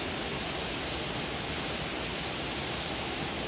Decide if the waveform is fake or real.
real